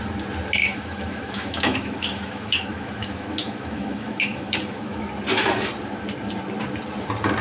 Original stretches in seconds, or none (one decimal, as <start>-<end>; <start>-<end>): 0.0-0.6; 5.0-7.4